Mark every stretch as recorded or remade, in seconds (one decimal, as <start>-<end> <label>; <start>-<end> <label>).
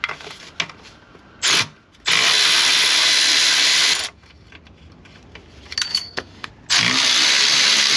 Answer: 0.0-5.9 recorded; 5.9-6.5 remade; 6.5-8.0 recorded